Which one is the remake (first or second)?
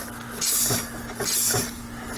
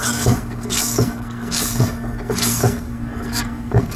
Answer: second